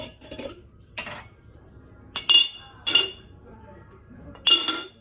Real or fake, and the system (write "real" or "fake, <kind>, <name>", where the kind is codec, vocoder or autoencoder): real